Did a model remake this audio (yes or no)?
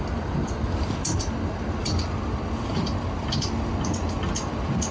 no